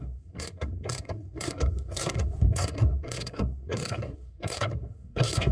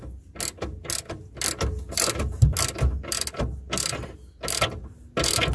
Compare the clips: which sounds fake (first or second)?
first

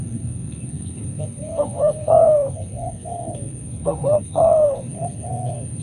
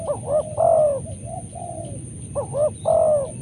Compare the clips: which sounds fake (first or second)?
first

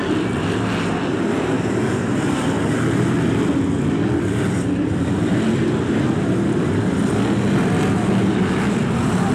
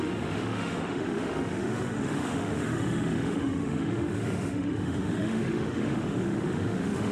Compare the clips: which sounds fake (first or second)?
second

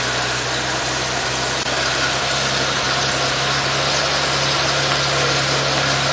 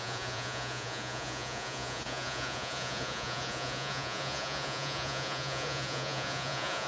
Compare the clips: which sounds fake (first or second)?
second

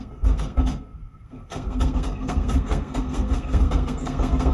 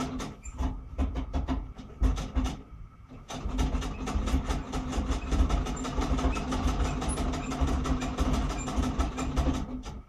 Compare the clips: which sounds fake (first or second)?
first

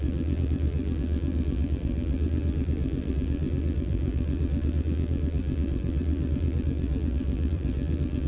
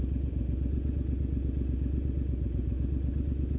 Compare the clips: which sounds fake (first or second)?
first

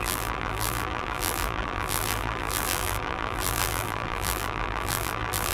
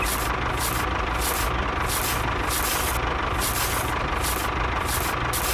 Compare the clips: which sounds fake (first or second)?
first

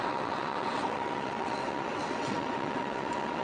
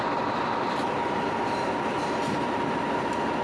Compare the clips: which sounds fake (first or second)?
first